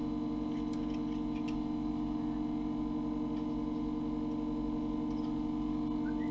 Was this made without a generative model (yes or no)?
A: yes